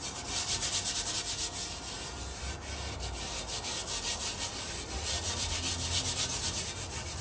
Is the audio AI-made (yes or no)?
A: no